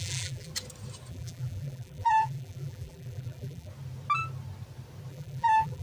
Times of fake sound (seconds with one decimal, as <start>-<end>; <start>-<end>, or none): 0.0-0.5; 1.1-3.7; 5.1-5.8